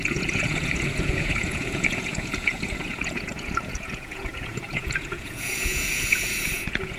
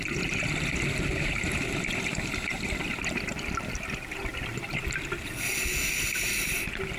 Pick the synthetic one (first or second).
first